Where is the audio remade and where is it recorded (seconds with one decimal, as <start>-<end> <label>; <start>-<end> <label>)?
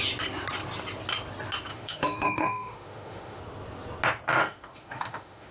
0.0-1.7 recorded; 1.7-3.4 remade; 3.4-4.4 recorded; 4.4-5.5 remade